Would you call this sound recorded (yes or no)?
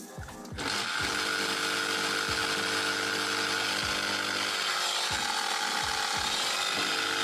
yes